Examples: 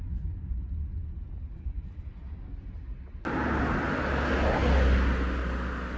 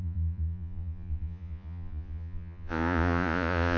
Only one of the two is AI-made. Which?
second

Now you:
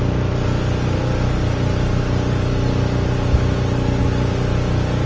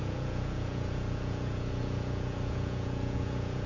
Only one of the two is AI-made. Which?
second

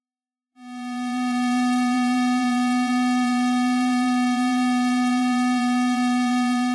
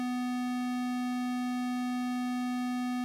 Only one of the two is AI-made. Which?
first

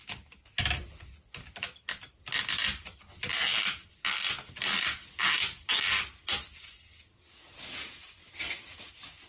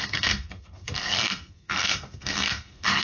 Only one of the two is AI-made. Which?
second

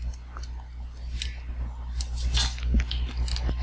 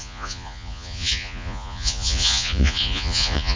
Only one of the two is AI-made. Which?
second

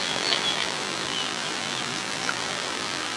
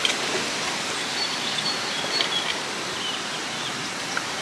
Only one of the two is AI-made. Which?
first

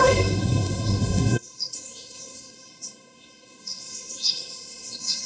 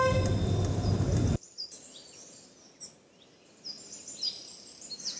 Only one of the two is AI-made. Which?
first